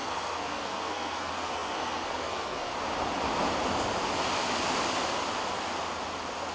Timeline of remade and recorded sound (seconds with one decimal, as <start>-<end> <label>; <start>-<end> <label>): 0.0-2.7 remade; 2.7-6.5 recorded